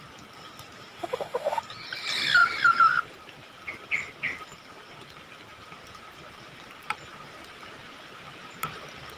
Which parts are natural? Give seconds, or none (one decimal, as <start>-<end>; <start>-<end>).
0.0-1.0; 1.6-9.2